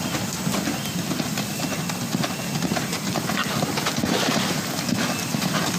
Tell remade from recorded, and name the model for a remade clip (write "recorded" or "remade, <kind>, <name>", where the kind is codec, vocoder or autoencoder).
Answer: recorded